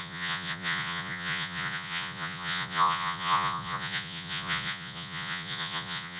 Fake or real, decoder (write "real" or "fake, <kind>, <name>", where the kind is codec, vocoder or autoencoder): fake, vocoder, Vocos